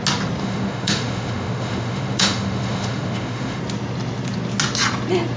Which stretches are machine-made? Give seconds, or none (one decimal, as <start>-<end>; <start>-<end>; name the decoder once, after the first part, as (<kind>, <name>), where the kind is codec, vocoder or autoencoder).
0.4-3.6 (autoencoder, DAC-VAE)